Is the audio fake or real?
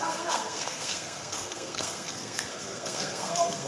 fake